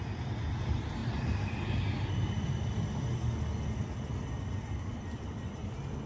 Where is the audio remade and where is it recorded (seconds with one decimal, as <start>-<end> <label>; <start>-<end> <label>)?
0.0-1.0 remade; 1.0-3.8 recorded; 3.8-6.1 remade